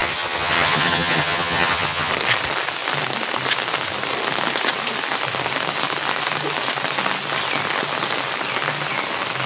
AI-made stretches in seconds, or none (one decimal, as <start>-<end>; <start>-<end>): 0.0-2.1